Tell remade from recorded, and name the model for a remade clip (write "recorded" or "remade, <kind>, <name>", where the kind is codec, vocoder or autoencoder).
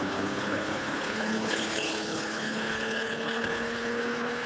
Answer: remade, codec, HILCodec